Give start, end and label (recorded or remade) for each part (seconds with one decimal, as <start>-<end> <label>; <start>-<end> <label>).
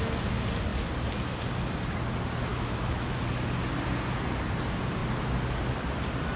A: 0.0-2.5 recorded; 2.5-3.2 remade; 3.2-6.4 recorded